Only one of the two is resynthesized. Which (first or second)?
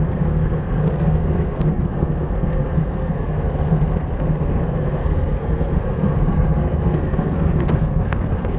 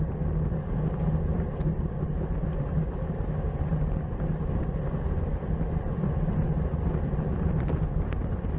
first